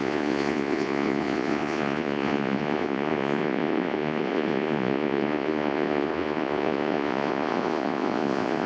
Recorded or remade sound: remade